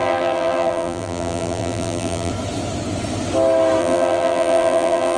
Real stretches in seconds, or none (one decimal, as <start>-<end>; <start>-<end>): 2.3-3.8